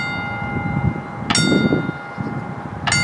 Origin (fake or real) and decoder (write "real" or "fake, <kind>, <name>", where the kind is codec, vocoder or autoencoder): real